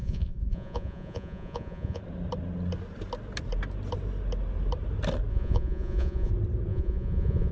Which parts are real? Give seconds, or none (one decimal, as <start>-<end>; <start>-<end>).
2.0-5.3; 6.3-6.7